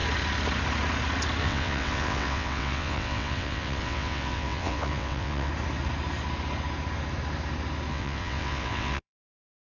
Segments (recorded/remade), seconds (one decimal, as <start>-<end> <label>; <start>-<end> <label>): 0.0-1.4 recorded; 1.4-5.5 remade; 5.5-7.9 recorded; 7.9-9.6 remade